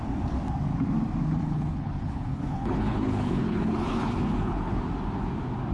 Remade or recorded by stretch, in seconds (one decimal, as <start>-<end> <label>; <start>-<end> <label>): 0.0-1.4 recorded; 1.4-4.8 remade; 4.8-5.7 recorded